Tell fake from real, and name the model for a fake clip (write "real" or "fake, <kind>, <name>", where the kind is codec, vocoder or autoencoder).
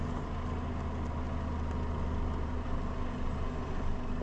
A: real